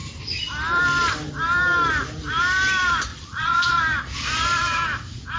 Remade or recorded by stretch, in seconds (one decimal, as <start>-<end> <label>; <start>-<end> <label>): 0.0-3.1 recorded; 3.1-3.8 remade; 3.8-5.4 recorded